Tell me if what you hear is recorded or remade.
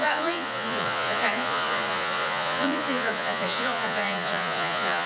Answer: remade